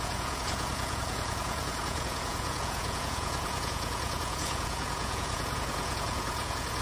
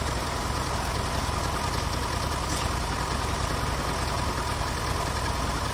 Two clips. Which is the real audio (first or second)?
second